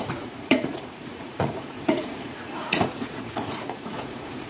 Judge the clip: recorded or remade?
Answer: remade